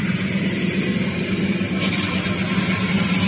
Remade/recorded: recorded